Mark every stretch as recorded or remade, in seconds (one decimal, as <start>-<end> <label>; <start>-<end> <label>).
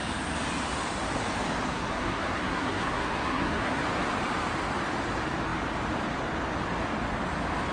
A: 0.0-1.7 recorded; 1.7-3.8 remade; 3.8-7.7 recorded